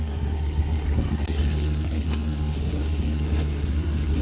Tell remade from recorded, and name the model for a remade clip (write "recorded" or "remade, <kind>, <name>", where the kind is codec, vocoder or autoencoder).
remade, codec, SNAC